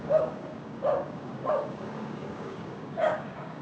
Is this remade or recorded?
remade